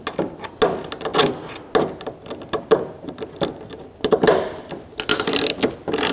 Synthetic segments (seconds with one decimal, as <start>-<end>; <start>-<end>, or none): none